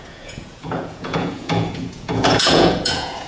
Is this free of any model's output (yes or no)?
no